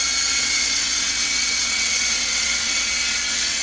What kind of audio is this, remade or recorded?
remade